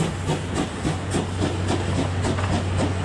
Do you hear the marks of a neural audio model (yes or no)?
no